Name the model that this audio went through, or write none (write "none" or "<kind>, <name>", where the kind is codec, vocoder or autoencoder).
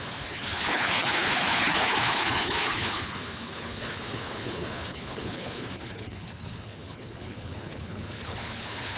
codec, HILCodec